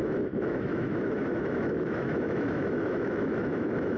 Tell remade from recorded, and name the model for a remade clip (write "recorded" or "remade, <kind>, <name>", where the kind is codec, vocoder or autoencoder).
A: remade, autoencoder, DAC-VAE